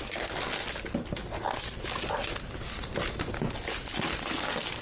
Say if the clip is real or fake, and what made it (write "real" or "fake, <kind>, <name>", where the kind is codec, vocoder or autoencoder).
real